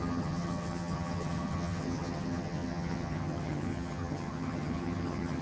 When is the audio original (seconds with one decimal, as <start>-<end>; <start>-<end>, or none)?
none